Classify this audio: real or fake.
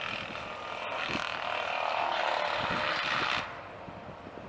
real